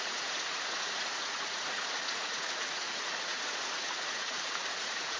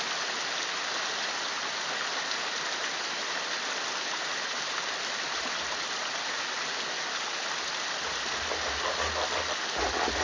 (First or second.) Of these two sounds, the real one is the second